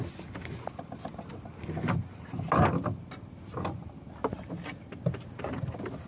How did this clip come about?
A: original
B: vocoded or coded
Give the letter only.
A